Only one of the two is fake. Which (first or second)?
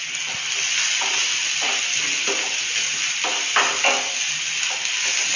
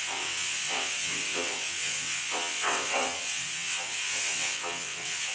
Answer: second